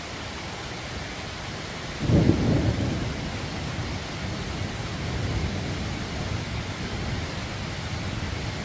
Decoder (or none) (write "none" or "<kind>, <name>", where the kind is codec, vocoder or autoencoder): none